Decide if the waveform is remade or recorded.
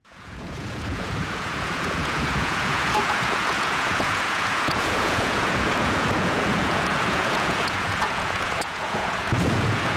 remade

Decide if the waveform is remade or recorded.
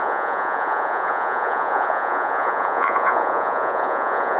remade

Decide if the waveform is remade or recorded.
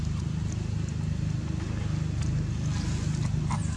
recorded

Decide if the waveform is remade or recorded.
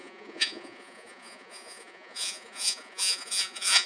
remade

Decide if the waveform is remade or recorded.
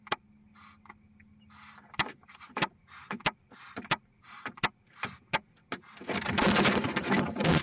recorded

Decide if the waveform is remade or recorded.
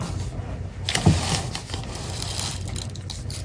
recorded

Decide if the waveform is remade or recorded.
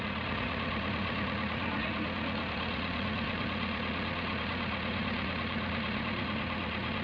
remade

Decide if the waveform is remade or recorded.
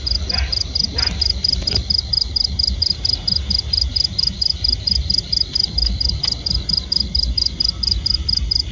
recorded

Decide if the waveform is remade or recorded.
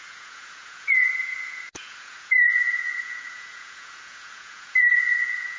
remade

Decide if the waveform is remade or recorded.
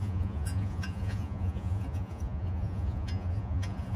remade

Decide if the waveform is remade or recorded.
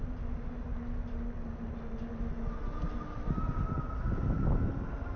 recorded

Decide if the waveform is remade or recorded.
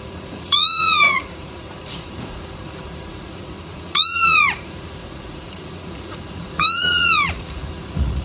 remade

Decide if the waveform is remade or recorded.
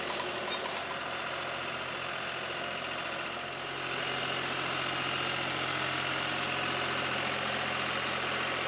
recorded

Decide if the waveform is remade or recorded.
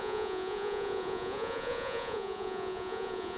remade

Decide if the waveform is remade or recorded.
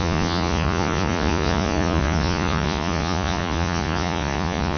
remade